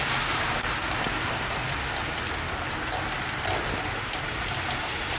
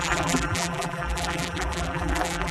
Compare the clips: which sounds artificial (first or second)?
second